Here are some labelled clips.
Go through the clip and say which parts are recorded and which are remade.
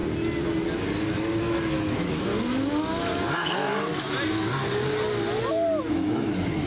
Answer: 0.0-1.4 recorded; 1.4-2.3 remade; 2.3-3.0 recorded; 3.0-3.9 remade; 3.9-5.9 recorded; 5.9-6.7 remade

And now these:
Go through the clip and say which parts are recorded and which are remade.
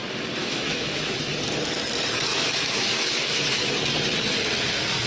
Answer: 0.0-0.4 recorded; 0.4-1.3 remade; 1.3-2.3 recorded; 2.3-3.7 remade; 3.7-5.1 recorded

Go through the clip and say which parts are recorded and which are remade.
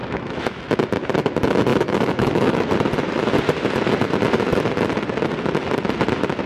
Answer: 0.0-0.6 remade; 0.6-1.7 recorded; 1.7-2.7 remade; 2.7-6.5 recorded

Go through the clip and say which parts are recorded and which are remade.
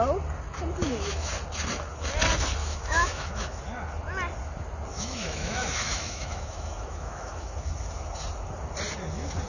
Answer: 0.0-0.8 recorded; 0.8-1.3 remade; 1.3-2.6 recorded; 2.6-3.6 remade; 3.6-4.9 recorded; 4.9-7.7 remade; 7.7-9.5 recorded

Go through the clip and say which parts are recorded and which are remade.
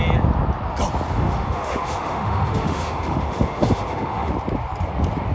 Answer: 0.0-1.1 recorded; 1.1-4.3 remade; 4.3-5.3 recorded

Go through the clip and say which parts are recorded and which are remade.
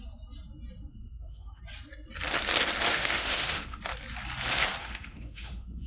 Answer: 0.0-0.9 recorded; 0.9-1.6 remade; 1.6-2.9 recorded; 2.9-3.8 remade; 3.8-4.8 recorded; 4.8-5.9 remade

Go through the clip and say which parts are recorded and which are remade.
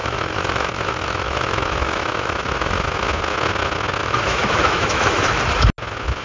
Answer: 0.0-3.0 remade; 3.0-4.0 recorded; 4.0-5.4 remade; 5.4-6.2 recorded